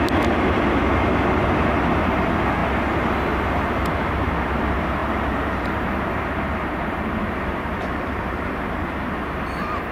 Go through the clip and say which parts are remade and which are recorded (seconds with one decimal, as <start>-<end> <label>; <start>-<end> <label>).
0.0-5.0 recorded; 5.0-9.2 remade; 9.2-9.9 recorded